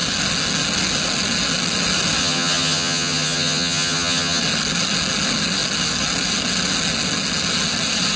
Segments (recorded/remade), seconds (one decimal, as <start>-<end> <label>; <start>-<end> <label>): 0.0-2.2 recorded; 2.2-4.4 remade; 4.4-8.2 recorded